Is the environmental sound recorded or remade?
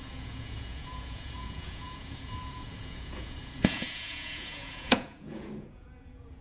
remade